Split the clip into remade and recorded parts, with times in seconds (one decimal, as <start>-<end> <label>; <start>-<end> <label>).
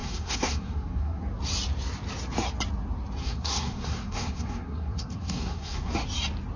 0.0-1.2 remade; 1.2-3.2 recorded; 3.2-5.9 remade; 5.9-6.6 recorded